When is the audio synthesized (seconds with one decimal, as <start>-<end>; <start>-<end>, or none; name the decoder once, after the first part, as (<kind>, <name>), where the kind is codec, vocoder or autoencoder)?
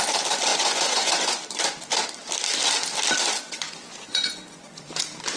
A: 0.5-1.4 (vocoder, Vocos); 3.3-5.0